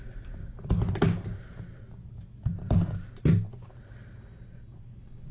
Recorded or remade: recorded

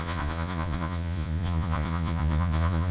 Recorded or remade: remade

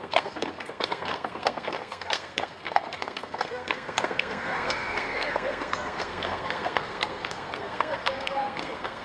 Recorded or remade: remade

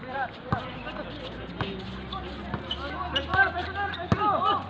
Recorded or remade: recorded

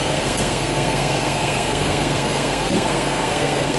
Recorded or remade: remade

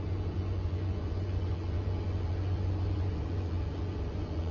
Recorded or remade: remade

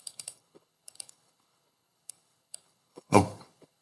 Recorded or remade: remade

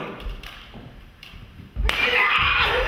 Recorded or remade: remade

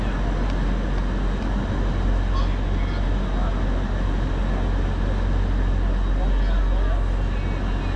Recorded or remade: recorded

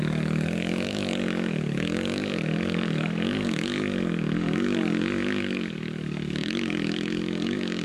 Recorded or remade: remade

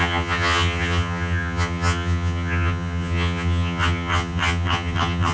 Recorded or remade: remade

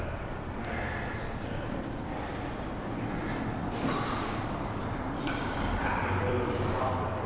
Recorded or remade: remade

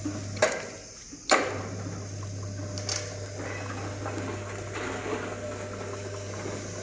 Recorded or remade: recorded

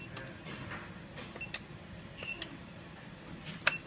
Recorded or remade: recorded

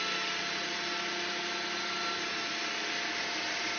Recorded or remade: recorded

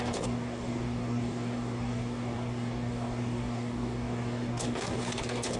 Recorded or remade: remade